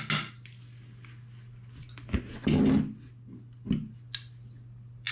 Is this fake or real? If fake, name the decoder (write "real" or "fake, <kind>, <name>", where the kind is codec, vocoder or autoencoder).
real